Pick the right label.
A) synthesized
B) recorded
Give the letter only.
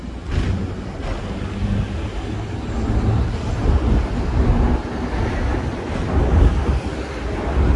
B